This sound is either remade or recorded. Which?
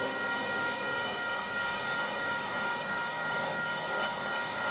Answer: remade